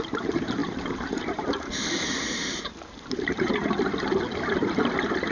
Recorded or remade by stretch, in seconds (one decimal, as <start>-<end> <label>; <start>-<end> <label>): 0.0-3.6 remade; 3.6-5.3 recorded